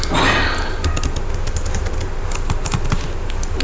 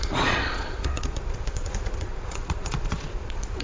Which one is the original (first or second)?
first